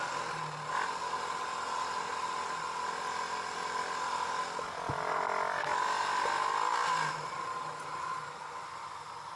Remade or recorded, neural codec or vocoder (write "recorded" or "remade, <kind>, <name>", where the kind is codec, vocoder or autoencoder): recorded